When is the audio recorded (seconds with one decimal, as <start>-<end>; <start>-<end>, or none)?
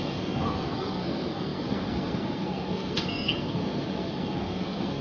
none